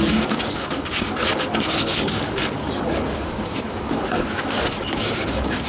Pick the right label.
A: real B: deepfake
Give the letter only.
B